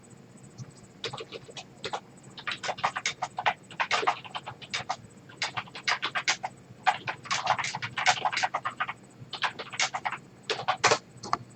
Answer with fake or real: real